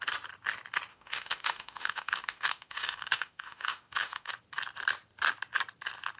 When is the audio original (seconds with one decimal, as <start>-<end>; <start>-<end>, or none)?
0.0-0.9; 4.3-6.2